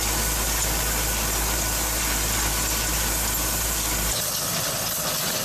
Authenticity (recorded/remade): recorded